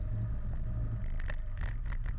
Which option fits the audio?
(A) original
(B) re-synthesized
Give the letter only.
A